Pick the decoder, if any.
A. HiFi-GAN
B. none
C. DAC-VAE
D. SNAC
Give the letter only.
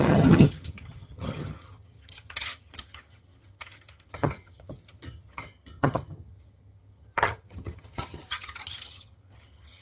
A